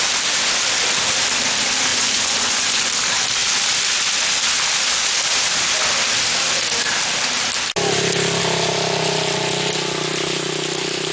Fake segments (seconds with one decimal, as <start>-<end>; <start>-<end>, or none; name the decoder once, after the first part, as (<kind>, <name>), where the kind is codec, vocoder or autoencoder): 1.9-2.9 (vocoder, Vocos)